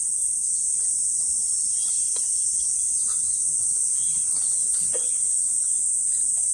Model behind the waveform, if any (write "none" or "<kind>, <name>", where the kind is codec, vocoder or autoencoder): none